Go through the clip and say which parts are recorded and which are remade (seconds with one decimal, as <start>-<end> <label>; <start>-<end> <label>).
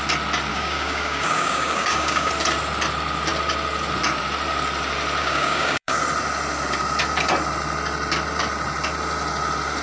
0.0-0.5 recorded; 0.5-2.3 remade; 2.3-5.2 recorded; 5.2-6.0 remade; 6.0-9.8 recorded